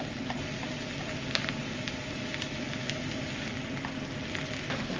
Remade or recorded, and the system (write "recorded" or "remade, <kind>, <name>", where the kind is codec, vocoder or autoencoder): recorded